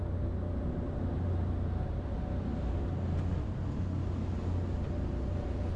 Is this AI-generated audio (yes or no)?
no